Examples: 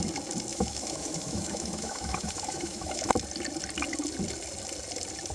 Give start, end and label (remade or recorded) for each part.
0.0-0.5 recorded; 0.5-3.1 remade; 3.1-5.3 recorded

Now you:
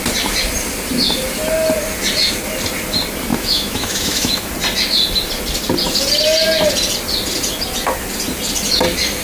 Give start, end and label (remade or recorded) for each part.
0.0-3.3 recorded; 3.3-4.5 remade; 4.5-9.2 recorded

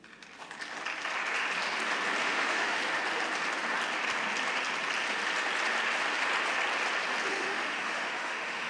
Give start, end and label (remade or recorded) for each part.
0.0-2.2 recorded; 2.2-2.8 remade; 2.8-7.3 recorded; 7.3-8.7 remade

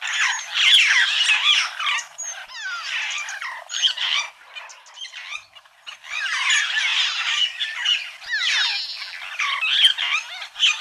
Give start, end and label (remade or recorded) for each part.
0.0-10.8 recorded

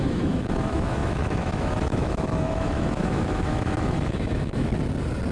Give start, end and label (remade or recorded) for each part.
0.0-4.7 remade; 4.7-5.3 recorded

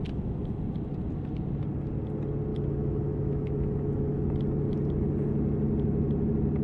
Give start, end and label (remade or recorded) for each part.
0.0-2.5 recorded; 2.5-4.4 remade; 4.4-6.6 recorded

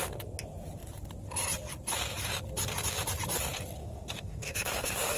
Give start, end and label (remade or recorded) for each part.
0.0-3.8 recorded; 3.8-5.2 remade